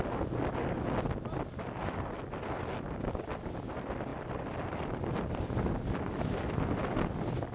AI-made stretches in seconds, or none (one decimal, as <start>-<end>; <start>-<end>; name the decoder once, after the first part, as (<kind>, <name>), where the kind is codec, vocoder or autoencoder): 4.1-6.2 (vocoder, BigVGAN v2)